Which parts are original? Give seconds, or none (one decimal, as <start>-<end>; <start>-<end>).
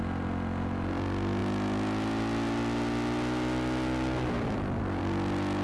0.0-5.6